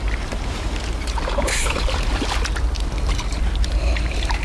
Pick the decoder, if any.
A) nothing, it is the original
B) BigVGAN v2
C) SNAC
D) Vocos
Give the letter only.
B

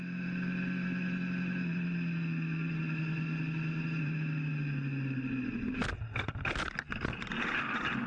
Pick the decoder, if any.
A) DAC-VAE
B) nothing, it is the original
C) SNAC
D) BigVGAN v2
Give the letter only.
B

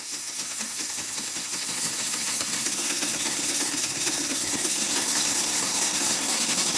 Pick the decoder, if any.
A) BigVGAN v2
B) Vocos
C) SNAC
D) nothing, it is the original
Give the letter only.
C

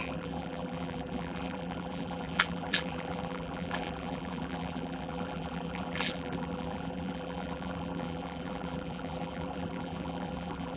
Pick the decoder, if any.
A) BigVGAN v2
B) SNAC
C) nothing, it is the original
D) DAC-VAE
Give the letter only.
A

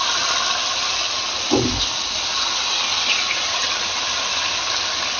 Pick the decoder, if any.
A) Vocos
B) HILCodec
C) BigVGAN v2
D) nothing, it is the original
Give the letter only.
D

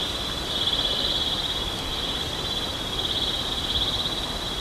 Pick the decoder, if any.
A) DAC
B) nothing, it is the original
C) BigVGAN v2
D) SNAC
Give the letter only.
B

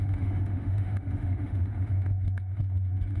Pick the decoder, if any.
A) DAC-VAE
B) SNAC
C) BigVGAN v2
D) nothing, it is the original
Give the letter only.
A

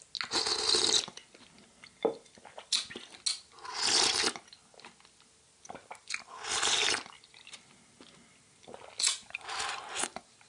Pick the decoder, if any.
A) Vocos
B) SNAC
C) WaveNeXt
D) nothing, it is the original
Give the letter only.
D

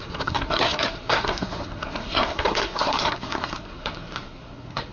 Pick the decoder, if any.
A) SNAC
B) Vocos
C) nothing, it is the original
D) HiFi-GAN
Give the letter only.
A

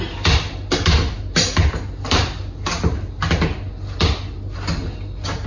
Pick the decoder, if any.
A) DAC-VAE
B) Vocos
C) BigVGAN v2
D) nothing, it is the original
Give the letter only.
D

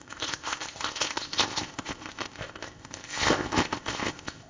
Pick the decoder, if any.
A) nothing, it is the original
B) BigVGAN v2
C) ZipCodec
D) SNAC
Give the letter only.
C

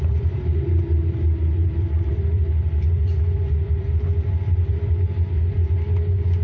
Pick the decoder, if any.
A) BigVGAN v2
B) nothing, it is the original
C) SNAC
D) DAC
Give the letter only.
A